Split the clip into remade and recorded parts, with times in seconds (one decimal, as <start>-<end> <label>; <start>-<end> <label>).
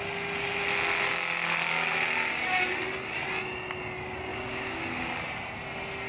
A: 0.0-4.3 recorded; 4.3-5.1 remade; 5.1-6.1 recorded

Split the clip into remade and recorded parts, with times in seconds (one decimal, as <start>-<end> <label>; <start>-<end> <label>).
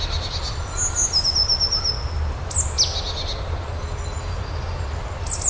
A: 0.0-5.5 recorded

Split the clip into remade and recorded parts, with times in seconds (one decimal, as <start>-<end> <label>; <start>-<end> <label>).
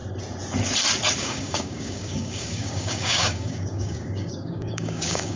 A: 0.0-1.2 recorded; 1.2-5.4 remade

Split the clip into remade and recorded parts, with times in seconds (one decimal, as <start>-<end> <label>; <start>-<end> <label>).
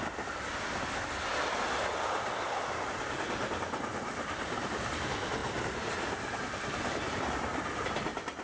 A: 0.0-8.4 recorded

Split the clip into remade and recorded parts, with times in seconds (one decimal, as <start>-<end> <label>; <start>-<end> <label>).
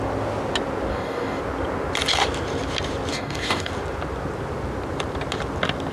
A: 0.0-0.9 recorded; 0.9-1.4 remade; 1.4-3.1 recorded; 3.1-3.7 remade; 3.7-5.9 recorded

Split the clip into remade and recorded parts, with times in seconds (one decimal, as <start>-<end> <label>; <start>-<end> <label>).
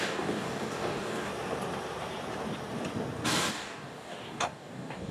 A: 0.0-1.3 remade; 1.3-3.5 recorded; 3.5-5.1 remade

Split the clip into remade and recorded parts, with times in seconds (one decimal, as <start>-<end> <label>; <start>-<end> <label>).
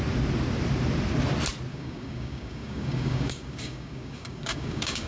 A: 0.0-1.7 recorded; 1.7-5.1 remade